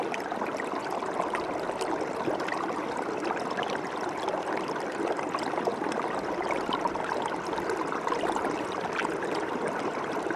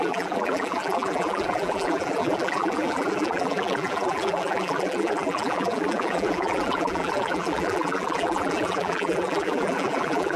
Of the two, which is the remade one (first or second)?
second